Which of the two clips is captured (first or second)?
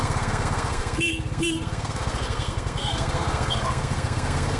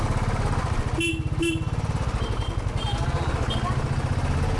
second